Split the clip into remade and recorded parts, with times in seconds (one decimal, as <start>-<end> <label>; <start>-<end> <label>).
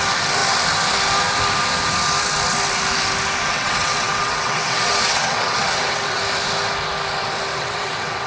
0.0-3.5 recorded; 3.5-6.2 remade; 6.2-7.5 recorded; 7.5-8.3 remade